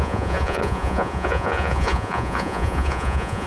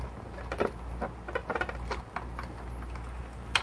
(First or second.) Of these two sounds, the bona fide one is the second